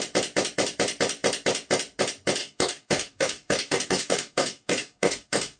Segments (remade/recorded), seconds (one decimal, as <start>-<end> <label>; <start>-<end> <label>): 0.0-2.4 recorded; 2.4-5.6 remade